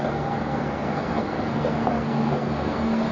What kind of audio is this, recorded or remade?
remade